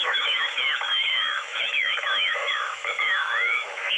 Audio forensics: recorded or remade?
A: remade